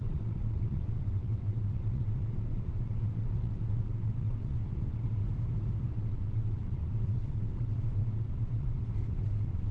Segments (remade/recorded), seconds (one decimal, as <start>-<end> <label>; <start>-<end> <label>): 0.0-5.2 remade; 5.2-5.9 recorded; 5.9-9.7 remade

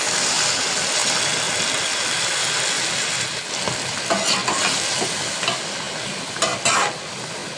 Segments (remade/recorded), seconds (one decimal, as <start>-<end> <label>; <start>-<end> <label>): 0.0-7.6 recorded

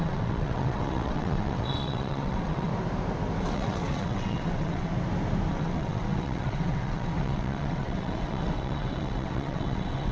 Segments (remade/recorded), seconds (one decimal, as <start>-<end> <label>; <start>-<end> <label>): 0.0-2.7 remade; 2.7-3.4 recorded; 3.4-4.9 remade; 4.9-5.5 recorded; 5.5-10.1 remade

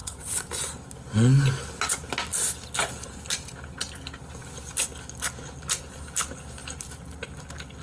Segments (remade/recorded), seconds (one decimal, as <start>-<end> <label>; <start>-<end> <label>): 0.0-0.5 remade; 0.5-7.8 recorded

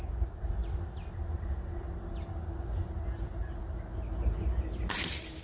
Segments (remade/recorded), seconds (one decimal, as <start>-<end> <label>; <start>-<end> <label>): 0.0-5.4 recorded

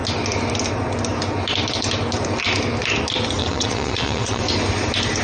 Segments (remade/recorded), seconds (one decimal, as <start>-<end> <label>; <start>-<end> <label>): 0.0-3.4 recorded; 3.4-4.4 remade; 4.4-5.2 recorded

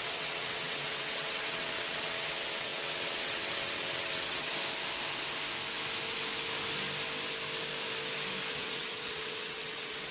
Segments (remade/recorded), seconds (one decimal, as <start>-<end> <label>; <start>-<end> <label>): 0.0-4.5 remade; 4.5-8.5 recorded; 8.5-10.1 remade

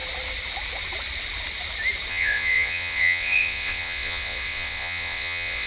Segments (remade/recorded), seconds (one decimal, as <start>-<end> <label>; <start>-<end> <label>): 0.0-2.1 recorded; 2.1-5.7 remade